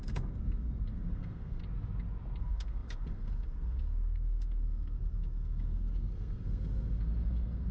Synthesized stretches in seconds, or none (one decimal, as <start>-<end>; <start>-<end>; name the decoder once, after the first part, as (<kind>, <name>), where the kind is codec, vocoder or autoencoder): 0.0-1.6 (codec, SNAC); 2.4-7.7